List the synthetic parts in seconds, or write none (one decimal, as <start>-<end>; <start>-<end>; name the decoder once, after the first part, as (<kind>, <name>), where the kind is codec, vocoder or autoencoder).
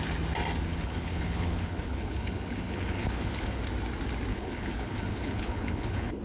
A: 0.7-3.6 (codec, HILCodec); 4.3-6.2